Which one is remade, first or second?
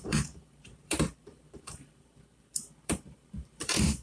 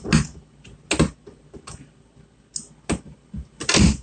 first